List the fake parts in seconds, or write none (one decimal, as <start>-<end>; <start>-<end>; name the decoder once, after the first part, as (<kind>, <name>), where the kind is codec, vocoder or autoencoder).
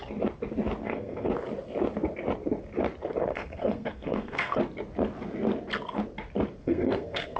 0.8-1.3 (codec, SNAC); 3.3-4.6; 6.6-7.4